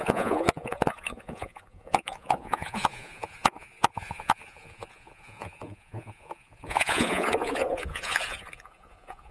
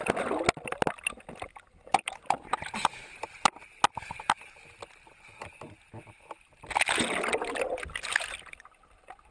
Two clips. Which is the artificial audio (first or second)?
first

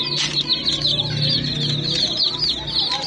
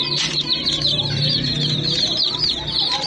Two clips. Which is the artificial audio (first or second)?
second